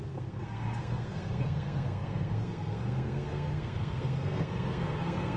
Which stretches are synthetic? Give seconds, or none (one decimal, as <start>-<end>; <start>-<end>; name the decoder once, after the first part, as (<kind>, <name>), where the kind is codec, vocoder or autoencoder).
0.0-5.4 (codec, SNAC)